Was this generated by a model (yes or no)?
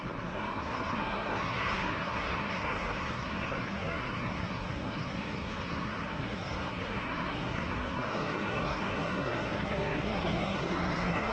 yes